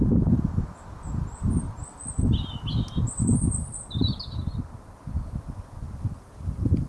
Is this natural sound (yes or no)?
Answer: yes